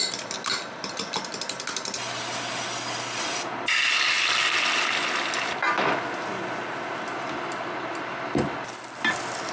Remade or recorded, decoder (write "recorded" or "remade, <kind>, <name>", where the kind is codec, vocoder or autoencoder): recorded